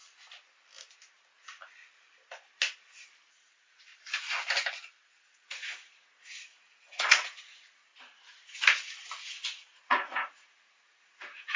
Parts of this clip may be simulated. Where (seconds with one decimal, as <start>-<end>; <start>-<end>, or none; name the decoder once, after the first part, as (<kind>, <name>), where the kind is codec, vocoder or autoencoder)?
3.3-3.9 (vocoder, Vocos); 5.1-7.9; 9.6-11.6